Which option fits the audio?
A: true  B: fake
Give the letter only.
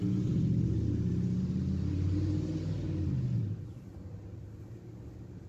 A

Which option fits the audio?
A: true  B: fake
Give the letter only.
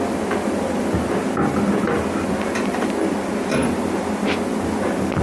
A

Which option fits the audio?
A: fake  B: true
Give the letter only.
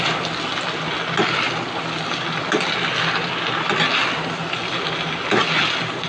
B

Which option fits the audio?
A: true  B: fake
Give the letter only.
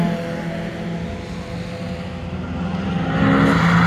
A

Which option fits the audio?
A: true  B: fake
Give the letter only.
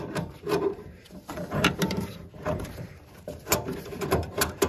B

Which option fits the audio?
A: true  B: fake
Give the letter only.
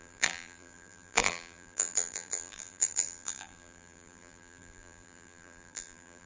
B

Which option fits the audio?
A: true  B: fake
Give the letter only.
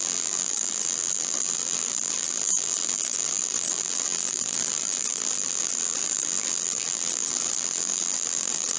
B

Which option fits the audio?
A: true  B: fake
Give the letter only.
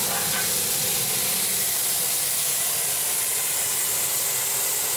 A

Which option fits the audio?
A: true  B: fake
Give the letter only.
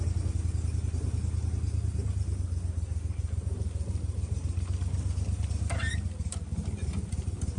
A